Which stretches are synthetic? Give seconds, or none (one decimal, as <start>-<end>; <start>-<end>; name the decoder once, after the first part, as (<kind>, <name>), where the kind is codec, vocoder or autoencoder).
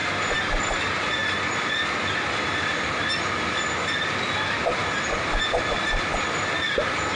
none